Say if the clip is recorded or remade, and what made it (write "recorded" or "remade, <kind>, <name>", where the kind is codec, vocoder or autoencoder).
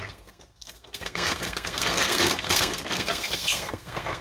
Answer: remade, codec, SNAC